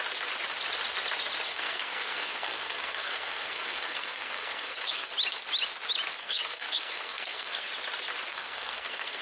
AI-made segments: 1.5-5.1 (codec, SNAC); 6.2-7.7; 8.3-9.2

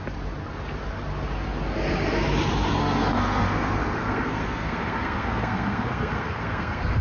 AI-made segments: 2.8-7.0 (codec, SNAC)

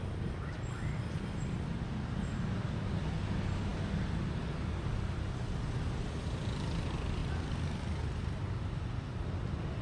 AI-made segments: none

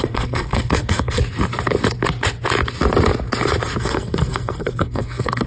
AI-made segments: 0.0-1.2 (codec, SNAC); 3.8-5.5

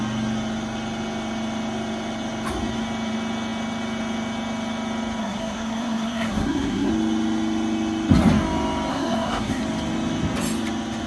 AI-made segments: 5.2-6.9 (codec, SNAC); 8.9-9.6

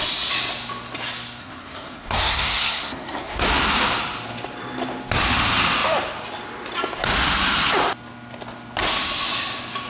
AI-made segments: 1.4-3.4 (codec, SNAC)

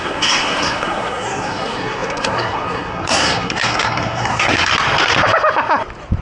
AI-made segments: 0.0-4.7 (codec, SNAC)

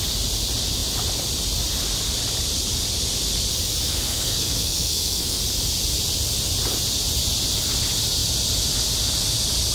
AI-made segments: 3.9-5.4 (codec, SNAC)